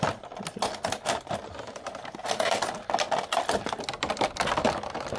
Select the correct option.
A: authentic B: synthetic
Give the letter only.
A